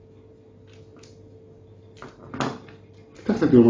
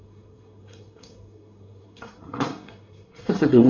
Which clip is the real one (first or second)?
first